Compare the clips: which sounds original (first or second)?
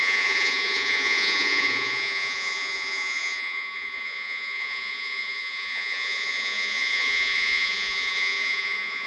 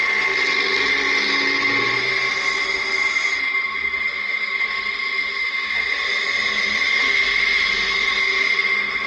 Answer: second